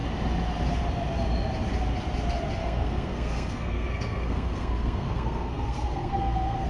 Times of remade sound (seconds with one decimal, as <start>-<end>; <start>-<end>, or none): 2.6-6.7